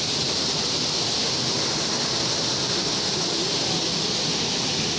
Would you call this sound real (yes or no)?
yes